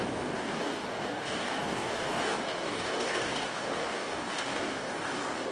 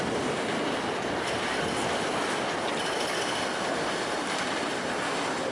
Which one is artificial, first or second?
first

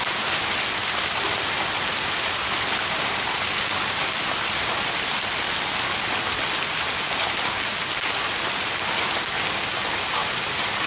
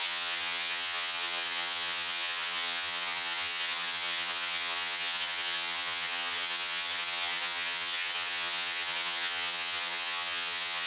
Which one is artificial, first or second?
second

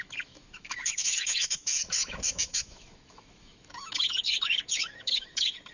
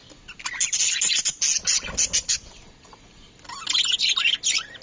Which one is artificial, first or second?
first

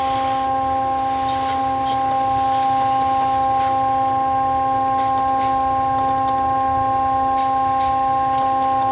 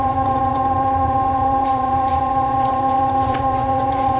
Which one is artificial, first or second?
second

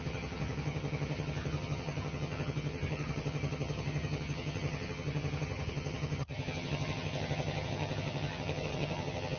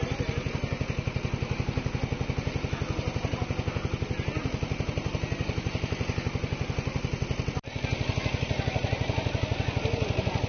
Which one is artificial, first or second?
first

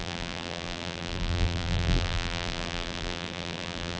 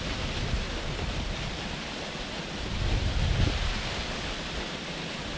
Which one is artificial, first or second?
first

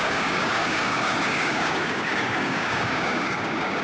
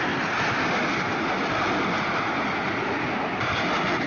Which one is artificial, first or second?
first